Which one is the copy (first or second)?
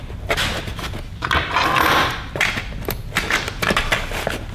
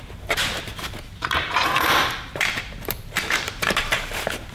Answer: second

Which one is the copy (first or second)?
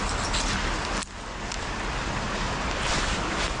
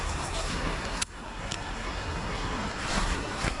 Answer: second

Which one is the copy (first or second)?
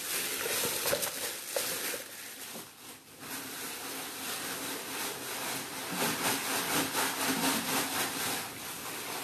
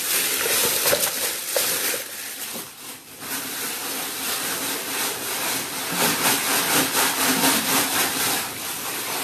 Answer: second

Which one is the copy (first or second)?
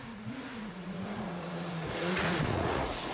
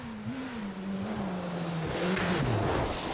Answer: first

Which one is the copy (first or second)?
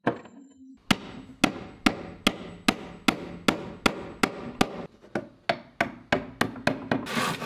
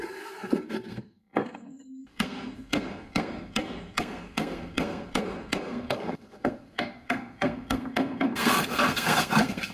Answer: second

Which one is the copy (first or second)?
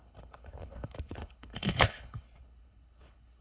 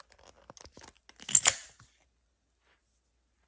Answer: first